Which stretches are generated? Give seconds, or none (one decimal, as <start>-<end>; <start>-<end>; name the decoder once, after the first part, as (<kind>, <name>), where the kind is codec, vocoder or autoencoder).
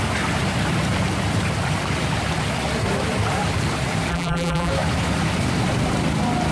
4.1-4.7 (vocoder, BigVGAN v2)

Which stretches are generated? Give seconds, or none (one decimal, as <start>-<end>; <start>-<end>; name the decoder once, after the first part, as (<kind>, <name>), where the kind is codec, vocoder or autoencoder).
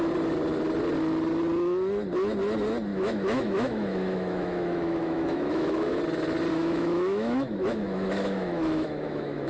2.9-6.0 (autoencoder, DAC-VAE); 6.5-9.5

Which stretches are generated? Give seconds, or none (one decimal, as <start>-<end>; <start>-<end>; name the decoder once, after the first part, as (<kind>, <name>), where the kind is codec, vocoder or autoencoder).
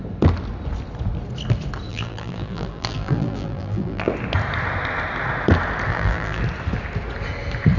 1.9-4.1 (vocoder, BigVGAN v2); 5.9-6.4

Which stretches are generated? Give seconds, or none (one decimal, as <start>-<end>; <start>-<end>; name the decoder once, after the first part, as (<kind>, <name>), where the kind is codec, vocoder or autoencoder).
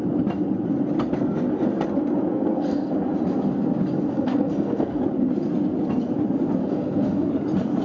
2.3-2.9 (codec, SNAC); 4.1-5.0; 6.6-7.3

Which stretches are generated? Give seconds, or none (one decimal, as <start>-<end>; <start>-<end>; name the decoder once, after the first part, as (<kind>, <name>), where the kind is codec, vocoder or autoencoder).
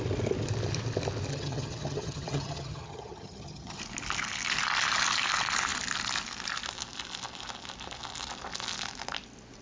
1.3-3.8 (vocoder, HiFi-GAN)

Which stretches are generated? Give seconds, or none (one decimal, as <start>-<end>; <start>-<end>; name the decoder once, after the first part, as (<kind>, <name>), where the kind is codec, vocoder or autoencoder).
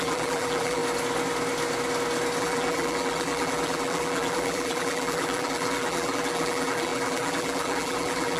0.0-0.8 (vocoder, BigVGAN v2); 2.4-8.4